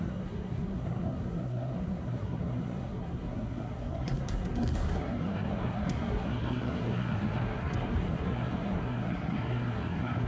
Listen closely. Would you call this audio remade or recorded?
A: remade